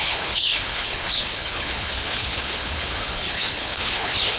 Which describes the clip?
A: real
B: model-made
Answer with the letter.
B